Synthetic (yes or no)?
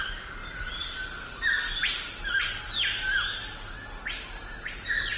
no